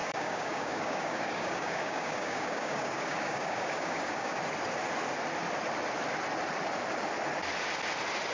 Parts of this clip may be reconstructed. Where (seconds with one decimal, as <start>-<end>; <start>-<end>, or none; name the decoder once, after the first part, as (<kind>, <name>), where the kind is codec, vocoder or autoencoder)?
0.0-4.4 (codec, DAC)